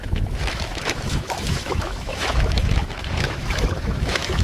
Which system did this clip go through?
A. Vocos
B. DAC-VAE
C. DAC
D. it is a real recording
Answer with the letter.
B